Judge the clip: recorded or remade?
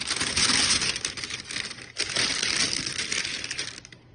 recorded